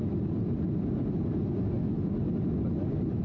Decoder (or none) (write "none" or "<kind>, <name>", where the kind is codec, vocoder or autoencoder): none